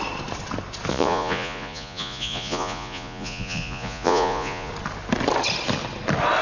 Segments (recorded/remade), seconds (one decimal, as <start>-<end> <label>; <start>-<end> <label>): 0.0-0.9 recorded; 0.9-4.7 remade; 4.7-6.4 recorded